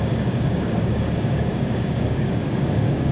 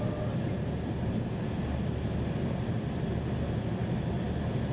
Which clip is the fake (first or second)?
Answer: first